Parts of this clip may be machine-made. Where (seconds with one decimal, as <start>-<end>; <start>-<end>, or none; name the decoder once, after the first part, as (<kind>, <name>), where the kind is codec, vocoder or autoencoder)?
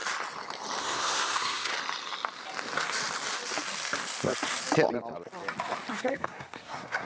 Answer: 0.8-1.7 (codec, SNAC); 5.9-7.0